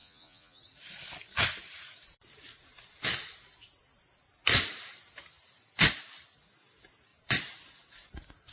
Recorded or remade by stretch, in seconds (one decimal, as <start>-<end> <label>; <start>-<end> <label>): 0.0-0.6 remade; 0.6-8.5 recorded